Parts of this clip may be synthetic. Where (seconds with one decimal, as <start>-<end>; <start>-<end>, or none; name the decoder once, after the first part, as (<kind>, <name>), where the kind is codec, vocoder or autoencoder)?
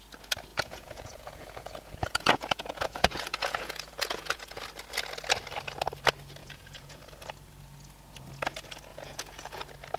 0.5-4.6 (vocoder, Vocos); 6.4-7.0; 8.9-9.6